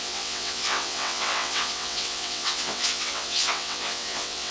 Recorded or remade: remade